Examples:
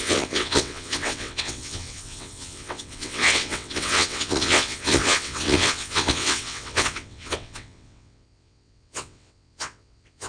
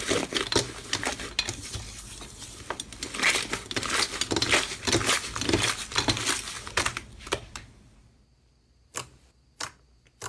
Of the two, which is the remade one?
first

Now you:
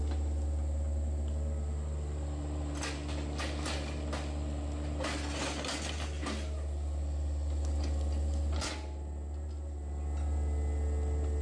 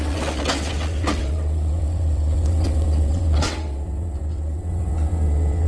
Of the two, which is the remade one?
second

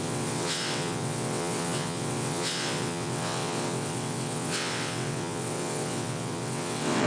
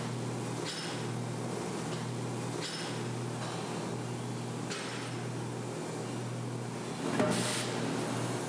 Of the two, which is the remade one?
first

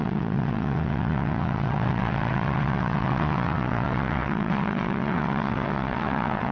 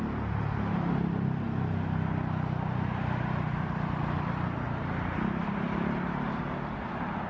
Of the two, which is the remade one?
first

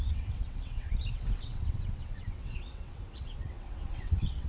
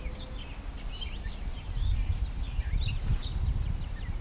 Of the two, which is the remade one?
first